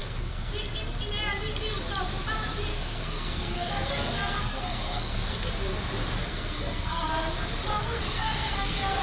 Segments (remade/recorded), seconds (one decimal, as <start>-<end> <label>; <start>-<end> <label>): 0.0-0.5 remade; 0.5-2.7 recorded; 2.7-5.5 remade; 5.5-6.2 recorded; 6.2-7.1 remade; 7.1-7.7 recorded; 7.7-9.0 remade